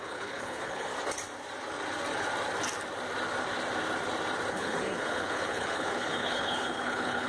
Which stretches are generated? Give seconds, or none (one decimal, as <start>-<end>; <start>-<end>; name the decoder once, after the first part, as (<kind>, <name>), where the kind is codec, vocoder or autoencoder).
0.0-0.9 (codec, HILCodec); 4.5-7.3